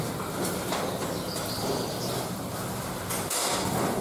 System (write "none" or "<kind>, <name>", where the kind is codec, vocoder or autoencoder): none